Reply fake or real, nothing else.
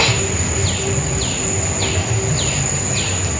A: real